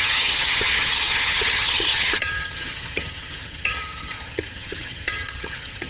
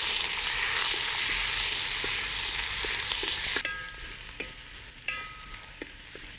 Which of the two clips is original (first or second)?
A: second